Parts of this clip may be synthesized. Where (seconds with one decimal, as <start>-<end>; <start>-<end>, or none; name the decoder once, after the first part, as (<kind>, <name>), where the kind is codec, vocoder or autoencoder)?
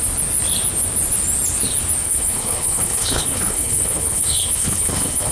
2.0-5.3 (codec, HILCodec)